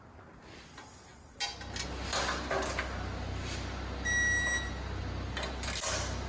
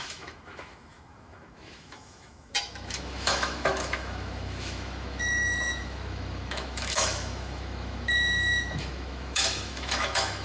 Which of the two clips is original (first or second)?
first